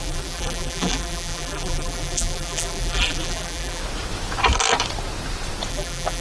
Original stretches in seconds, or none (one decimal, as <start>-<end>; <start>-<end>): 3.8-5.7